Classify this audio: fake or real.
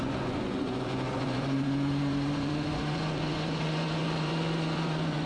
fake